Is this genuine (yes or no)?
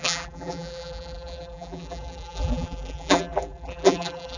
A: no